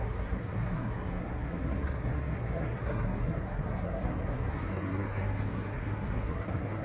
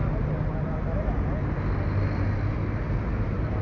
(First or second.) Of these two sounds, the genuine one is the second